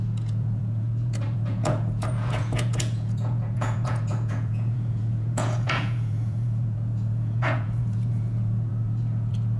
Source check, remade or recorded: remade